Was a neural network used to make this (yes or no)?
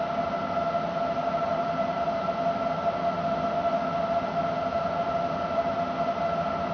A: no